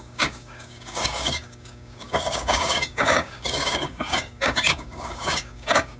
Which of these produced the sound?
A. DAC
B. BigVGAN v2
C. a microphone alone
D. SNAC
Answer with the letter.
A